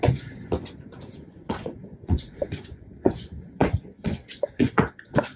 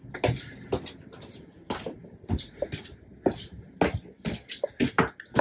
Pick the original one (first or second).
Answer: second